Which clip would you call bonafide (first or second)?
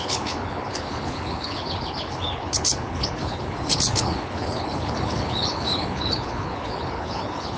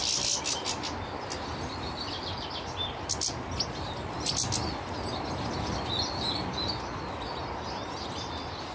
second